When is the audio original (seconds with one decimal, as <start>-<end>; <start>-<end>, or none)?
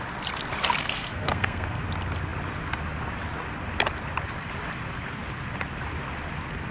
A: 0.0-0.8; 1.8-6.7